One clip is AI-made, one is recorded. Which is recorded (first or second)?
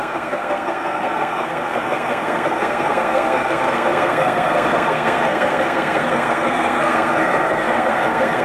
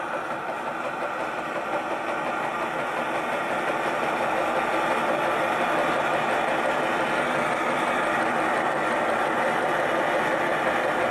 second